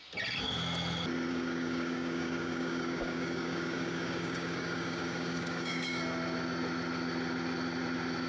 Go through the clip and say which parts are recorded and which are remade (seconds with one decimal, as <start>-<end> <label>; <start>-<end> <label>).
0.0-1.3 recorded; 1.3-6.0 remade; 6.0-8.3 recorded